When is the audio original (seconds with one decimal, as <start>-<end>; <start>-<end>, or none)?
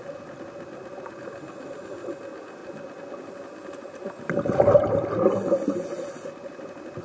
0.0-7.0